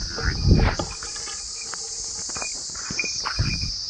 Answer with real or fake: real